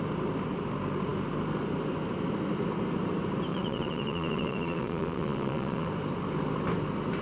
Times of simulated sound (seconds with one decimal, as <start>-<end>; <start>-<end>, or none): 3.5-5.9